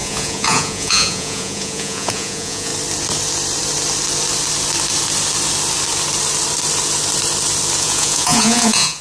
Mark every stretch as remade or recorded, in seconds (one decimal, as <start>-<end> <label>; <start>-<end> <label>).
0.0-2.7 remade; 2.7-7.8 recorded; 7.8-9.0 remade